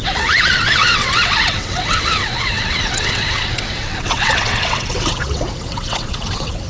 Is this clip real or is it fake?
fake